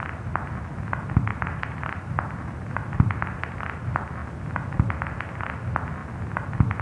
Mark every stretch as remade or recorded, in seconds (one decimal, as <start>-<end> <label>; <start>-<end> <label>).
0.0-1.3 recorded; 1.3-3.6 remade; 3.6-6.8 recorded